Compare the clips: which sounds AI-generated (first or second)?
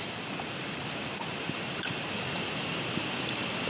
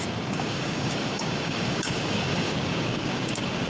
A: second